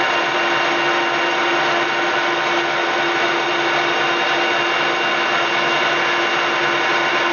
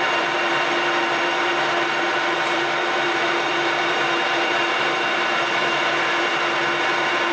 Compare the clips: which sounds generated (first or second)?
second